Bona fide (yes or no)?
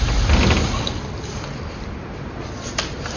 no